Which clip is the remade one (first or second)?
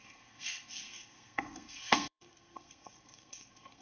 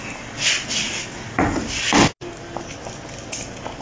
first